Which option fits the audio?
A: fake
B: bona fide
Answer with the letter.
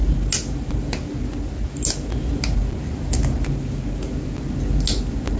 B